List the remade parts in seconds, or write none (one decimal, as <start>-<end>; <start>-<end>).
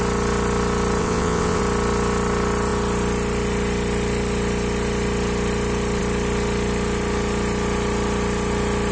1.0-1.6